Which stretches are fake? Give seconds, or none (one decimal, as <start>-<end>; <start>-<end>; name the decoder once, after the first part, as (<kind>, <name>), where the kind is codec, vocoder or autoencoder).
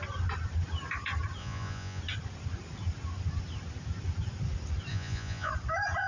1.4-2.0 (vocoder, Vocos); 4.9-5.5